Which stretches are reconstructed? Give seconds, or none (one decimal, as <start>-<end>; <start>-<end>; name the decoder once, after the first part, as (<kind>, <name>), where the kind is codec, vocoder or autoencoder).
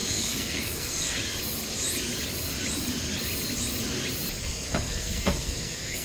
0.0-1.2 (codec, SNAC); 4.4-6.0